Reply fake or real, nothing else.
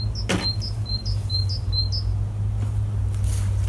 real